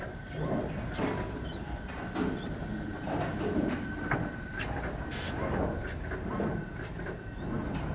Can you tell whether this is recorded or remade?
recorded